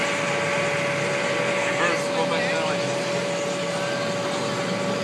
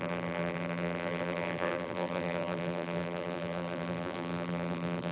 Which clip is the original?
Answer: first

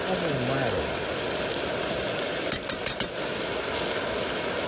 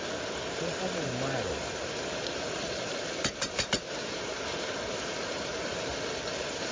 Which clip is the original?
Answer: first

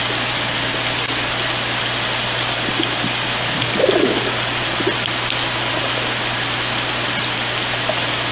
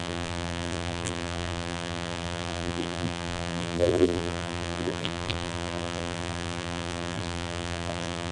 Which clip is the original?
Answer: first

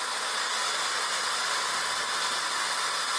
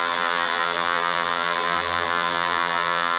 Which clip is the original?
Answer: first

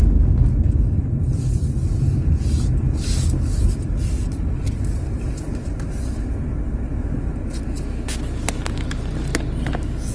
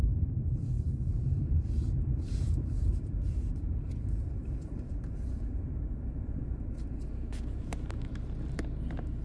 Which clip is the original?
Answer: first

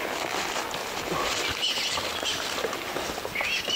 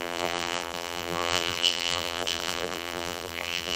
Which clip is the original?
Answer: first